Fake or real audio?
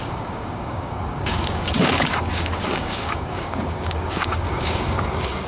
fake